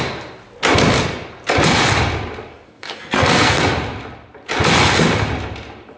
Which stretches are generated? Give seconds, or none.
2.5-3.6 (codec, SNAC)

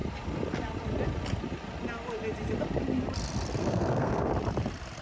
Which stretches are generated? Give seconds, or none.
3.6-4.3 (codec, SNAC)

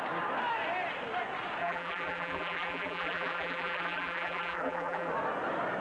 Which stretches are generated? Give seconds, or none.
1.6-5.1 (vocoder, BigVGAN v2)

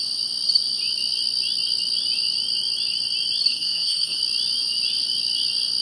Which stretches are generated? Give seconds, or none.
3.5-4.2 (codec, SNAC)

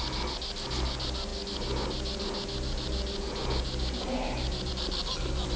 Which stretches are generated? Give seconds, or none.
none